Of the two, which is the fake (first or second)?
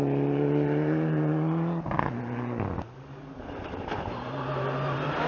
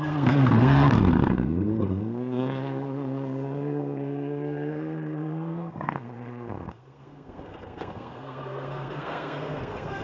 second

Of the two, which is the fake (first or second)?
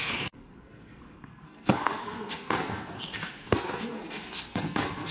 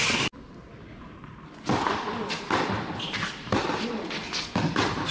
first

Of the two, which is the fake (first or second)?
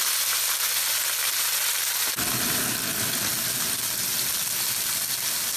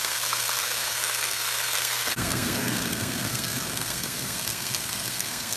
second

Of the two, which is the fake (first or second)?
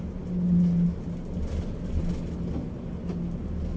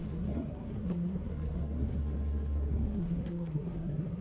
second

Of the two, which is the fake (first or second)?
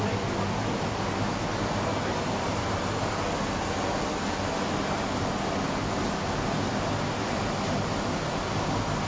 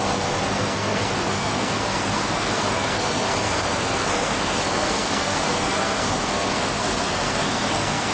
second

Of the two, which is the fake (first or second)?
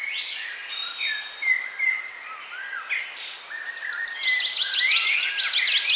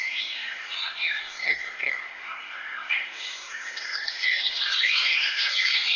second